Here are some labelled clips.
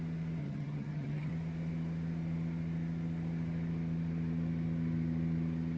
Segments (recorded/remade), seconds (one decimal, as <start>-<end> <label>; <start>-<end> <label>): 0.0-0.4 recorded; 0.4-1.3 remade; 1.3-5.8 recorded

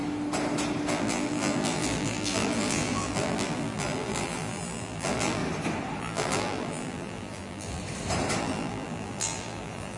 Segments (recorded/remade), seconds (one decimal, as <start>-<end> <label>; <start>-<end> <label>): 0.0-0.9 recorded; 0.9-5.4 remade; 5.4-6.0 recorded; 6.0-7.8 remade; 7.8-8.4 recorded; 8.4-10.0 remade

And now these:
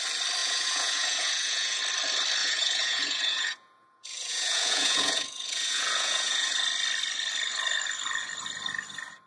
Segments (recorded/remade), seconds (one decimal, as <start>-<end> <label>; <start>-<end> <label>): 0.0-0.4 recorded; 0.4-1.8 remade; 1.8-2.4 recorded; 2.4-6.5 remade; 6.5-9.3 recorded